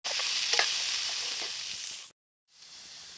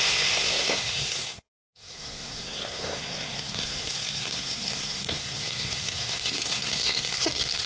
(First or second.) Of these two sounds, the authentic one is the first